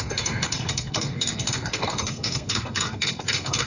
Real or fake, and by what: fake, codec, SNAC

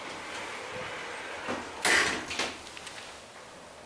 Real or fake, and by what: real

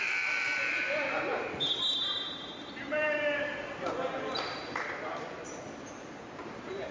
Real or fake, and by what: fake, vocoder, BigVGAN v2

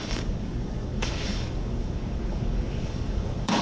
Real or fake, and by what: fake, codec, DAC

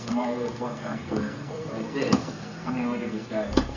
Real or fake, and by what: fake, codec, SNAC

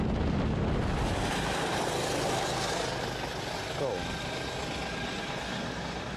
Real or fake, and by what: real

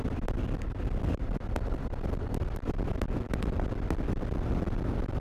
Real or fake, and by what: real